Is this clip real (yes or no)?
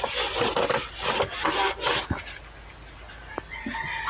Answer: yes